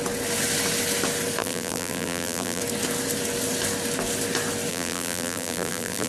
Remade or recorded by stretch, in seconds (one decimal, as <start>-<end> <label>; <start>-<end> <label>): 0.0-1.4 recorded; 1.4-2.6 remade; 2.6-4.7 recorded; 4.7-6.1 remade